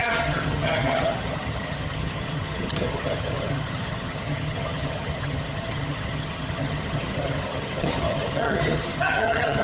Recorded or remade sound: remade